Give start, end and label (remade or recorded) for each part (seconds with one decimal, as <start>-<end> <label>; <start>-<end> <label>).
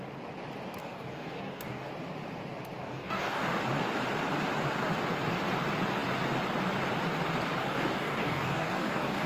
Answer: 0.0-0.8 recorded; 0.8-1.9 remade; 1.9-2.8 recorded; 2.8-3.6 remade; 3.6-7.6 recorded; 7.6-9.3 remade